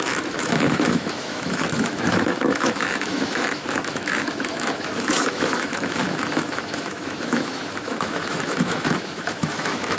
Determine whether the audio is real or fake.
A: fake